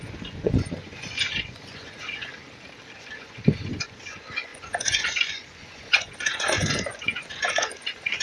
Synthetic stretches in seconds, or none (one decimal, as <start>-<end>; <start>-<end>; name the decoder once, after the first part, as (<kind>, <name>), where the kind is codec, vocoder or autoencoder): 0.0-2.3 (vocoder, Vocos); 3.0-8.2